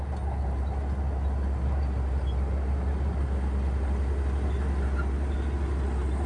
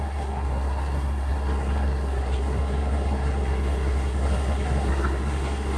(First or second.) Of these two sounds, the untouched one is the first